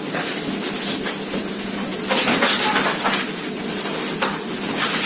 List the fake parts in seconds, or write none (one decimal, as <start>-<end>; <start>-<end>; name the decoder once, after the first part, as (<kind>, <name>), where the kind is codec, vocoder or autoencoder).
none